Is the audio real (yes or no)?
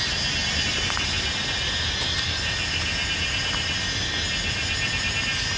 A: yes